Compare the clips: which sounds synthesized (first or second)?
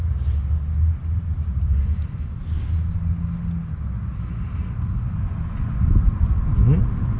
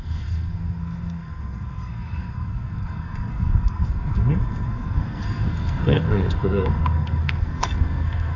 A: second